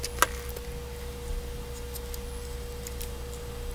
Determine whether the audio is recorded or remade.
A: recorded